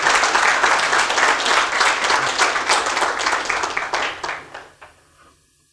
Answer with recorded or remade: recorded